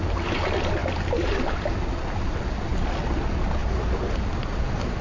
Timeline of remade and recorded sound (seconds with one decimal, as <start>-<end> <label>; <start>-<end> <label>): 0.0-5.0 recorded